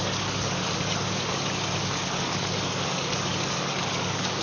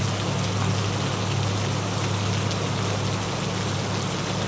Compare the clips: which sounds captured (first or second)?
second